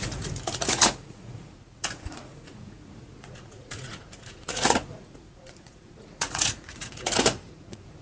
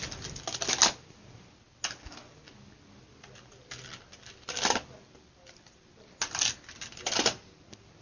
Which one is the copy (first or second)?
first